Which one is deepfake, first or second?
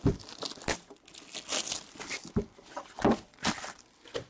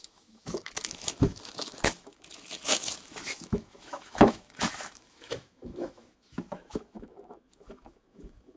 second